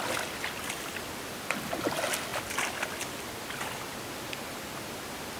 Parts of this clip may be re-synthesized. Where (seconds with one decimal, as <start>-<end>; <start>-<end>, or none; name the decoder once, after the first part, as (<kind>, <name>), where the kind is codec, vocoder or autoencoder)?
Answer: none